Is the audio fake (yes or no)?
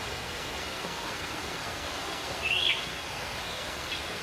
yes